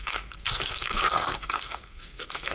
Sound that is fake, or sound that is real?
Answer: fake